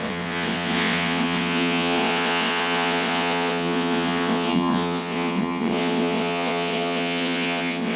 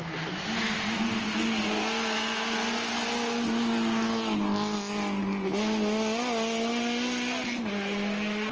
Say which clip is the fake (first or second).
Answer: first